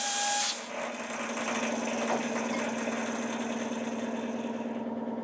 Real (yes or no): yes